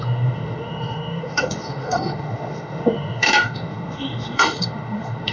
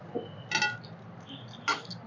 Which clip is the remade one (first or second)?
first